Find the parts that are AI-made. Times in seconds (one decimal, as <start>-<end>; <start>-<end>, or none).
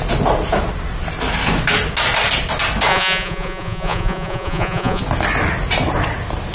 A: 2.9-5.0